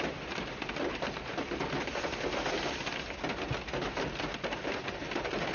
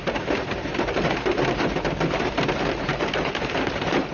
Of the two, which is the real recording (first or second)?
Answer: first